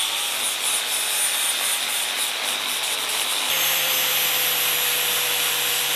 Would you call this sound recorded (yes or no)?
no